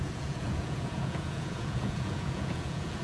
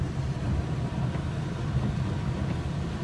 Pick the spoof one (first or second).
first